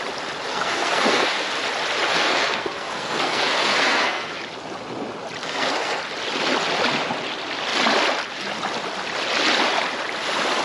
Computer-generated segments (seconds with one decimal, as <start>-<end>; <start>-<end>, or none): 0.5-1.5; 2.1-4.4; 5.4-6.0